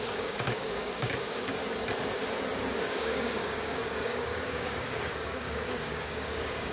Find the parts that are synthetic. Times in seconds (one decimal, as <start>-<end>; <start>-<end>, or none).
0.0-1.6; 2.8-6.7